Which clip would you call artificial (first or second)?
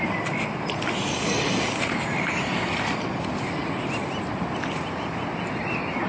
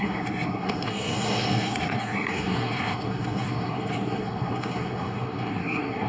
second